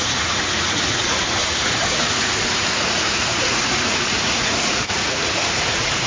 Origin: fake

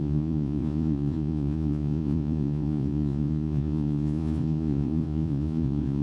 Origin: fake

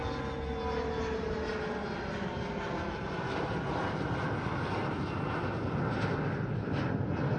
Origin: real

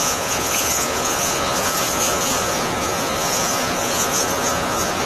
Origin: fake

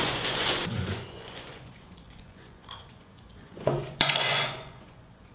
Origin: fake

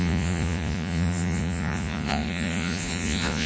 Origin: fake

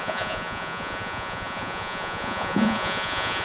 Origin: fake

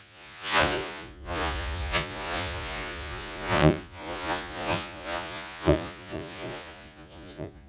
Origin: fake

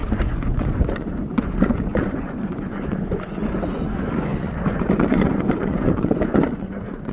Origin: fake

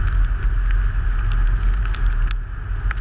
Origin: real